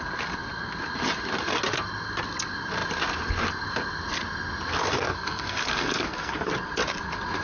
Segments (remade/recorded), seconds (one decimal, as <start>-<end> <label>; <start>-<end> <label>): 0.0-4.8 recorded; 4.8-6.5 remade; 6.5-7.4 recorded